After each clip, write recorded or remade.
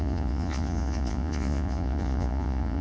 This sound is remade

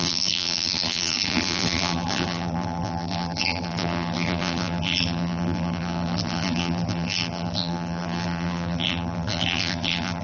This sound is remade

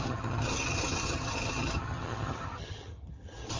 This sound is remade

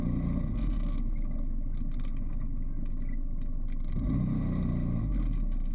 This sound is recorded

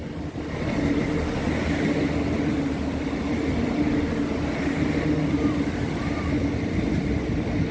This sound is recorded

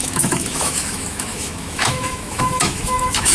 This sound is remade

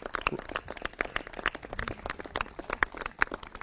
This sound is recorded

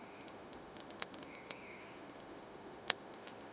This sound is remade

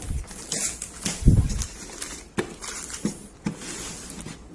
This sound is recorded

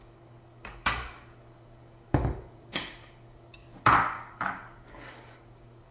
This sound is remade